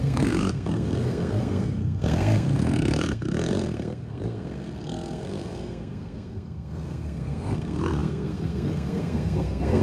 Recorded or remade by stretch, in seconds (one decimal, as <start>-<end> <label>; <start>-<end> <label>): 0.0-9.8 remade